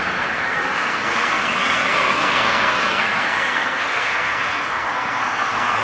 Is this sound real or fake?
fake